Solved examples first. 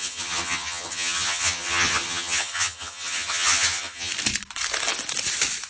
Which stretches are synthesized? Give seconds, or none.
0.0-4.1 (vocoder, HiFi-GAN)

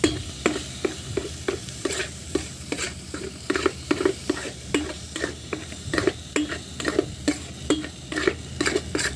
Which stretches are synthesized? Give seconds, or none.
1.6-6.1 (vocoder, BigVGAN v2)

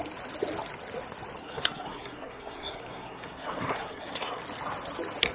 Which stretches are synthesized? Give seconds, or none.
1.4-4.4 (codec, SNAC)

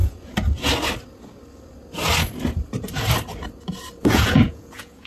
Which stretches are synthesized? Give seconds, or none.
4.0-5.1 (vocoder, Vocos)

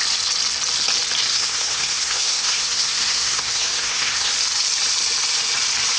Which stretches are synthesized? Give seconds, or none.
1.3-4.3 (codec, SNAC)

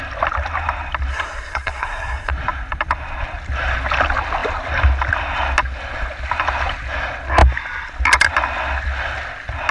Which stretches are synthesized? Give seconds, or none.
1.1-2.3 (codec, SNAC)

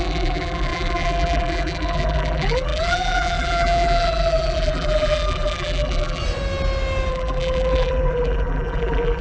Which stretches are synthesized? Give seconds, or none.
0.0-6.2 (vocoder, BigVGAN v2); 7.1-9.2